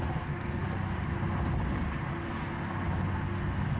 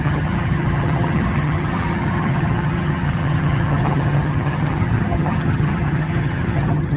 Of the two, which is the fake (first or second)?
second